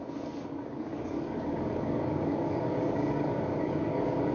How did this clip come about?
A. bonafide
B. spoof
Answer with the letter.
B